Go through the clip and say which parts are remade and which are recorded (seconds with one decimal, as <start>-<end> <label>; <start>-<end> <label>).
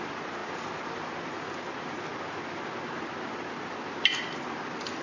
0.0-5.0 recorded